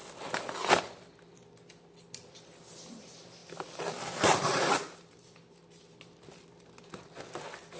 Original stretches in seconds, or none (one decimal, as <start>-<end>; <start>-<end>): 0.0-7.8